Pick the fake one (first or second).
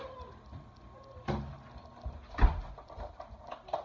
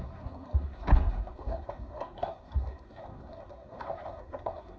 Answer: second